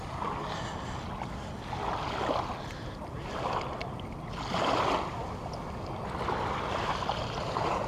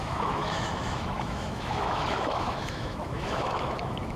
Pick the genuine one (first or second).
first